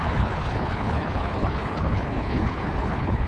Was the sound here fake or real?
fake